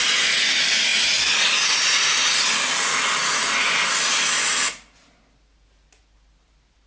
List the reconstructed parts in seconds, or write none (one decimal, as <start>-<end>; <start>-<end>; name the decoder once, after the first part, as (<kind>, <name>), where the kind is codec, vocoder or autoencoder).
none